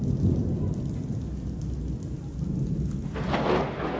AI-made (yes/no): no